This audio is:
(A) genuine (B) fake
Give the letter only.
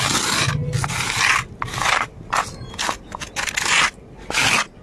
A